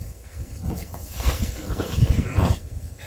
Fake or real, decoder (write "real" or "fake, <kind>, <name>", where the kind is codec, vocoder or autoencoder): fake, codec, SNAC